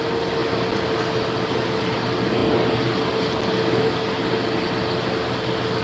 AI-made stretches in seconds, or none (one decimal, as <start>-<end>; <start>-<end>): none